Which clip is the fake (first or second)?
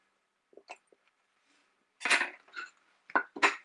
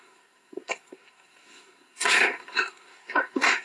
second